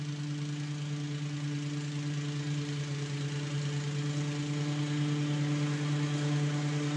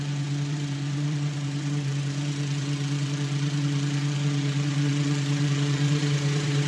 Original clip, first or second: first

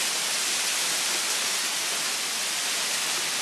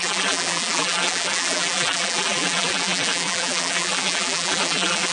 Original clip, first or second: first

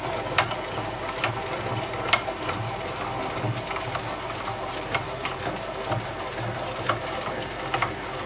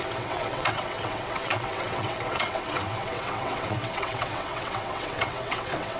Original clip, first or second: first